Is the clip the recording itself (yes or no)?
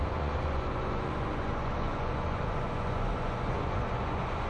no